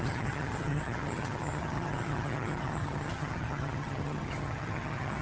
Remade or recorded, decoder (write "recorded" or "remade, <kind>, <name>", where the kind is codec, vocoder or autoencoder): remade, vocoder, HiFi-GAN